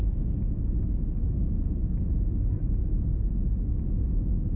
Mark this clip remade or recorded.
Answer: recorded